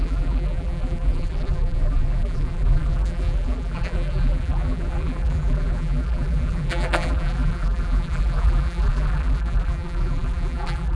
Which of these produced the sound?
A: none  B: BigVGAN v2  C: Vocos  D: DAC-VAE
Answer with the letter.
B